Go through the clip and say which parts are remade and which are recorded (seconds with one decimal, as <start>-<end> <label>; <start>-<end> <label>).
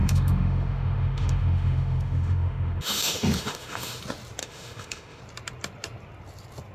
0.0-4.0 remade; 4.0-4.4 recorded; 4.4-5.2 remade; 5.2-6.7 recorded